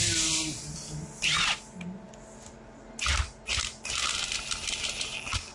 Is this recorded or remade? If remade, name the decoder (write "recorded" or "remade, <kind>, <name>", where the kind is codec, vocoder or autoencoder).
recorded